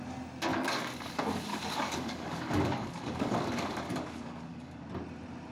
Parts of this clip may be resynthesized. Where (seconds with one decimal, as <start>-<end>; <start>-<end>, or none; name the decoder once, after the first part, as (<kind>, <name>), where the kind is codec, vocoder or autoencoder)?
0.5-1.1 (codec, DAC); 1.5-4.8